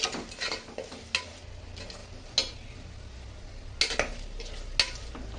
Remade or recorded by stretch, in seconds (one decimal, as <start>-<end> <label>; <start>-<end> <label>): 0.0-5.4 recorded